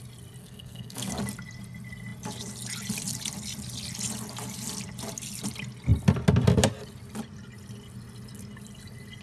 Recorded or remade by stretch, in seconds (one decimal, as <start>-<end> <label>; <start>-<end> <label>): 0.0-0.4 recorded; 0.4-1.1 remade; 1.1-9.2 recorded